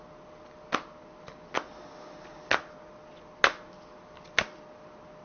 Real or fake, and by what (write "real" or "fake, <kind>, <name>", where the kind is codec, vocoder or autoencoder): real